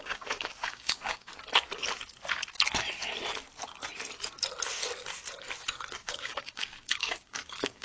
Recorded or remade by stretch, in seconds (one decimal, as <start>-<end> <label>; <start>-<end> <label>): 0.0-1.3 remade; 1.3-6.0 recorded; 6.0-7.8 remade